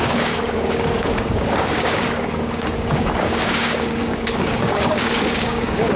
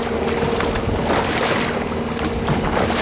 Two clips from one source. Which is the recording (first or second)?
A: second